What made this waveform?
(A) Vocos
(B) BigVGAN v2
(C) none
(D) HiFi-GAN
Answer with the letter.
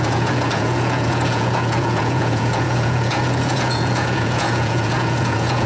A